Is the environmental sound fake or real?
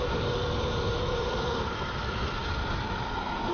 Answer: real